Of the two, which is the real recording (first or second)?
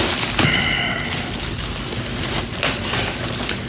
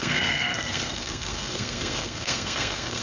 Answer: first